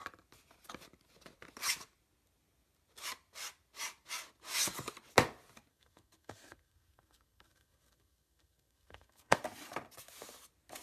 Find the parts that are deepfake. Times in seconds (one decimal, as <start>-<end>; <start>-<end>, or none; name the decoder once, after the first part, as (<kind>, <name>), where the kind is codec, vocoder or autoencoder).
5.7-9.4 (codec, SNAC)